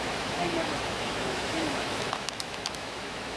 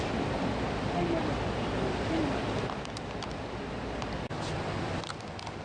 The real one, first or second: second